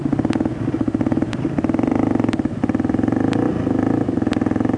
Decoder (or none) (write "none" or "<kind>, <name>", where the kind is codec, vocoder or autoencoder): none